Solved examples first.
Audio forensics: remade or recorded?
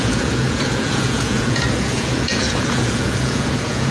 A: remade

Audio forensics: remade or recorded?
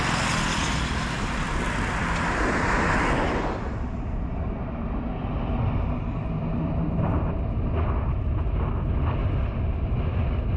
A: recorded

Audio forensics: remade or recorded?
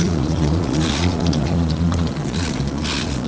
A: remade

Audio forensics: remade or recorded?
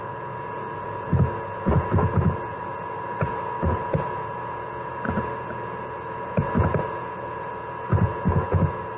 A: remade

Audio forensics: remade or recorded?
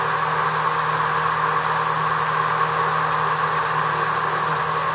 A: recorded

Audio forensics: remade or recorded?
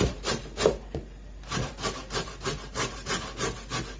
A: recorded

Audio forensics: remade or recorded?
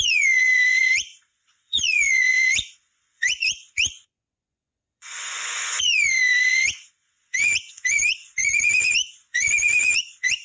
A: remade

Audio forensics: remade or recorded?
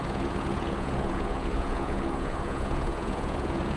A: remade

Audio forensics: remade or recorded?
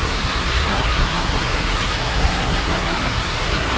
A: remade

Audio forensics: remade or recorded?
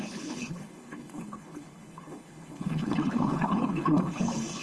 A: remade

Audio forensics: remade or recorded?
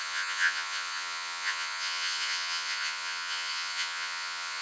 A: remade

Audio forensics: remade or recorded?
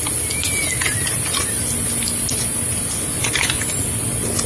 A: recorded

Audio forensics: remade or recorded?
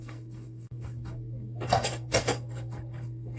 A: remade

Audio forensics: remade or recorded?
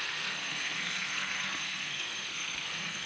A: remade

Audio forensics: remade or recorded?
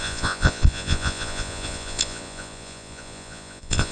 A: remade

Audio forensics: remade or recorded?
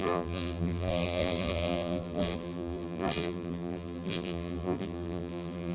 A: remade